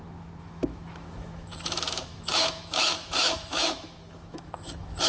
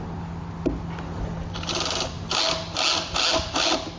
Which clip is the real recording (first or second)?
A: second